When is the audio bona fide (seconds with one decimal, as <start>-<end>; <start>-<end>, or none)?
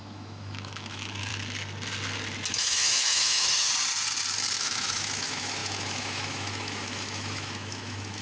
1.3-2.5; 3.7-4.6